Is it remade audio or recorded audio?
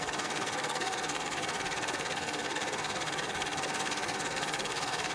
remade